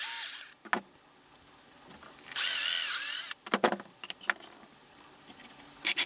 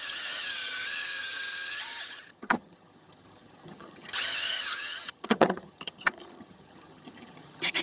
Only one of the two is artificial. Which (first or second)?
second